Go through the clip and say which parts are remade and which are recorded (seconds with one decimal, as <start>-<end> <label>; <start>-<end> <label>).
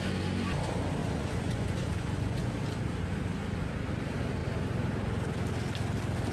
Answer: 0.0-1.0 recorded; 1.0-2.5 remade; 2.5-6.3 recorded